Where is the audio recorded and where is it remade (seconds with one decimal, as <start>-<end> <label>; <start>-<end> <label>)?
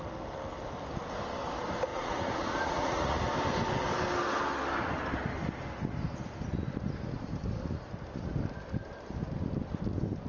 0.0-1.9 recorded; 1.9-3.2 remade; 3.2-10.3 recorded